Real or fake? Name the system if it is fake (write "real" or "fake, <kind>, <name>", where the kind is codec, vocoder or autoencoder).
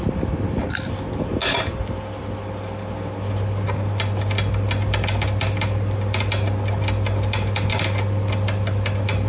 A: real